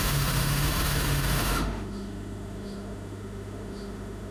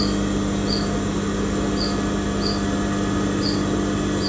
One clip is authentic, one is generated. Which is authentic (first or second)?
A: second